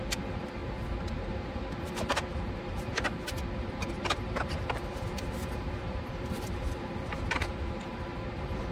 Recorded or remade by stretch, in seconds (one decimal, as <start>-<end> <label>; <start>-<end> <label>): 0.0-0.6 remade; 0.6-1.1 recorded; 1.1-2.9 remade; 2.9-3.6 recorded; 3.6-8.7 remade